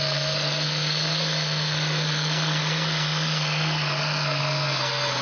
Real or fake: fake